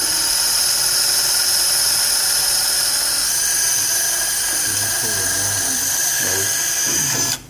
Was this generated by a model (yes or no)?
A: no